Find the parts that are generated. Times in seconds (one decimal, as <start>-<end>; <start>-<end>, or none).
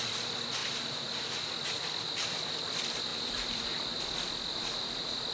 0.6-1.5; 3.1-4.0